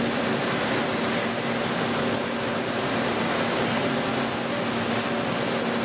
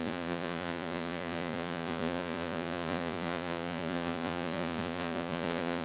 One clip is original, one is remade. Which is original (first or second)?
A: first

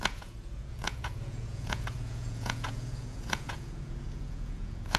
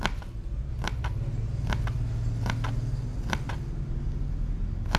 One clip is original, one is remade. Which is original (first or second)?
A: second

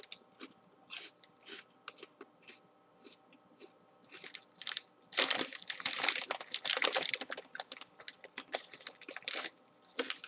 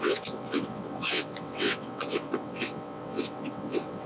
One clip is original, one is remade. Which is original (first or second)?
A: first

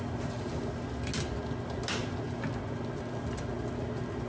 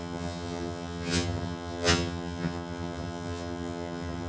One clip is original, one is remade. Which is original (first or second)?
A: first